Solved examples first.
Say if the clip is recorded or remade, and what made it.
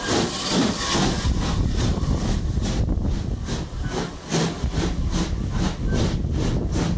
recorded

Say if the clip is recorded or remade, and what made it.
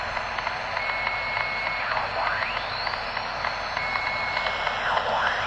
recorded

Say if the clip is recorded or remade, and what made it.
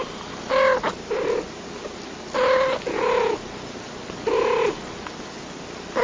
recorded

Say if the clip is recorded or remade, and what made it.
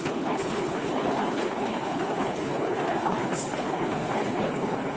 remade, codec, HILCodec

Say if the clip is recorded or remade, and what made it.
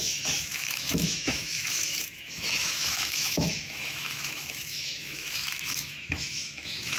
remade, autoencoder, DAC-VAE